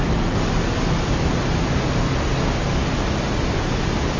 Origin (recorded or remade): recorded